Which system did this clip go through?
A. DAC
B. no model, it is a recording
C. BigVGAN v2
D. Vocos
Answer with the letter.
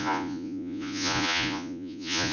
D